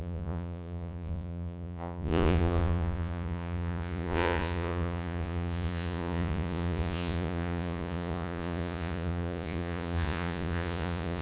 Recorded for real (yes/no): no